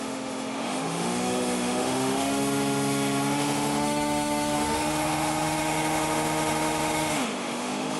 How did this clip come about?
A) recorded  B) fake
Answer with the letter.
B